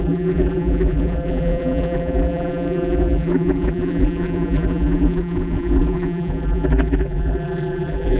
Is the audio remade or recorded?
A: remade